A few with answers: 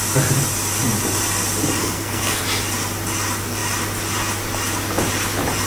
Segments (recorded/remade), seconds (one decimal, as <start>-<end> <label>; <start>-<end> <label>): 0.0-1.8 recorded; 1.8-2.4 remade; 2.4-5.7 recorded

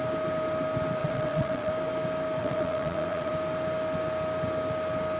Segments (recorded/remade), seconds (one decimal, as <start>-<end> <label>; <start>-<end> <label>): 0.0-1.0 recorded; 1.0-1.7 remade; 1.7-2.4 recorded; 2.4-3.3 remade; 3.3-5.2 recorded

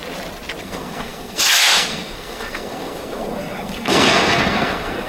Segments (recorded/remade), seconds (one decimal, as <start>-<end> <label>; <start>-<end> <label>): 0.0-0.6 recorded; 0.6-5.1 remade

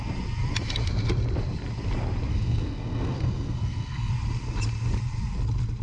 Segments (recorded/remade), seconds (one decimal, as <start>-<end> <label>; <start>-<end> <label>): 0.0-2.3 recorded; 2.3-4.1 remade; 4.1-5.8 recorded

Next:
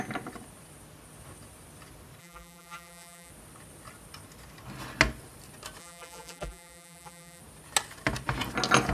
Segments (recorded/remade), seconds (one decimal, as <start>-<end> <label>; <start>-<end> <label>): 0.0-2.2 recorded; 2.2-3.3 remade; 3.3-5.8 recorded; 5.8-7.4 remade; 7.4-8.9 recorded

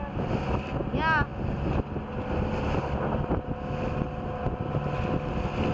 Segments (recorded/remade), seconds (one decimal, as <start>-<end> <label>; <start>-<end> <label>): 0.0-5.7 recorded

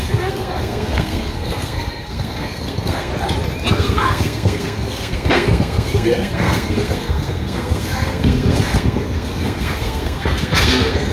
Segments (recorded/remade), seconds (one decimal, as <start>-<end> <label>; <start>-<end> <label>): 0.0-3.1 remade; 3.1-3.7 recorded; 3.7-11.1 remade